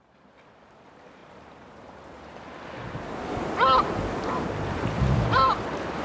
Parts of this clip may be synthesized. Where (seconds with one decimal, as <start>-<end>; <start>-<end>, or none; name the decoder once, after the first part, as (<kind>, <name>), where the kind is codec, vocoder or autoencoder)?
none